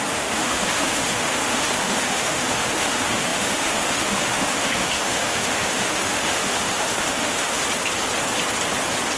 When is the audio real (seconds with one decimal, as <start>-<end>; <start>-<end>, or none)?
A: 7.6-9.2